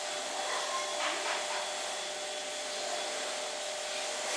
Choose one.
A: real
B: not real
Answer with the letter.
A